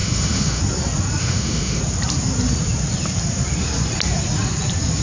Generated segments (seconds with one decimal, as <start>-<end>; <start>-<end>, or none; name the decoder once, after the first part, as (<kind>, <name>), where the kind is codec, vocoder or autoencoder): 0.0-0.6 (autoencoder, DAC-VAE); 1.2-1.8